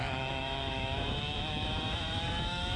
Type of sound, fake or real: fake